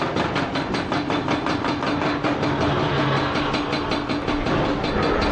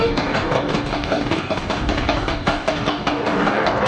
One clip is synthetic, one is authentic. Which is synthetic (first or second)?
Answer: second